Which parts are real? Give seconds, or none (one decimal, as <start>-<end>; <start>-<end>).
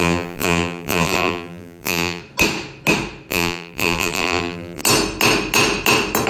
2.2-3.3; 4.8-6.3